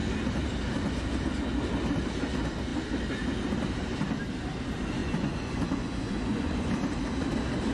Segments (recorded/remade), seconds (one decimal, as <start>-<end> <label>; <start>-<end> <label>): 0.0-5.0 recorded; 5.0-6.7 remade; 6.7-7.7 recorded